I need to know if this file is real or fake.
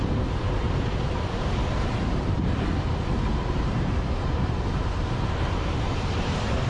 fake